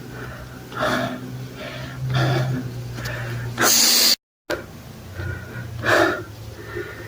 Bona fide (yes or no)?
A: yes